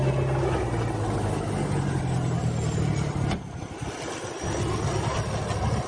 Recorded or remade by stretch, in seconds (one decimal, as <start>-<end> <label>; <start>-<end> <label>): 0.0-5.9 recorded